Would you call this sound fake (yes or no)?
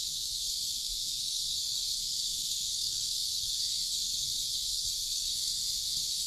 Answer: yes